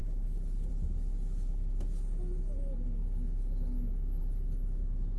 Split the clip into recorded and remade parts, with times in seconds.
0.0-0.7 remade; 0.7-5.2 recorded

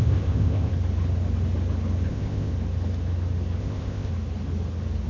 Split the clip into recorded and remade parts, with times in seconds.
0.0-0.7 remade; 0.7-2.1 recorded; 2.1-2.5 remade; 2.5-3.6 recorded; 3.6-4.1 remade; 4.1-5.1 recorded